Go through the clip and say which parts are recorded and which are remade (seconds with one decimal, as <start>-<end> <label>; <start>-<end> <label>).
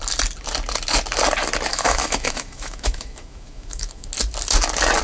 0.0-1.7 recorded; 1.7-4.1 remade; 4.1-5.0 recorded